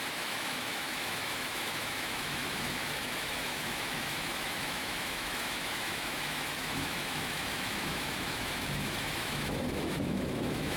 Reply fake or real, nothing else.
fake